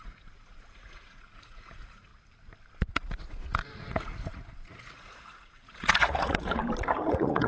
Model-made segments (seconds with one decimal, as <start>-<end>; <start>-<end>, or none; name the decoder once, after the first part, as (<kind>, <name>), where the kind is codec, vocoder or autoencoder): 0.0-2.1 (vocoder, Vocos); 2.9-6.6; 7.1-7.5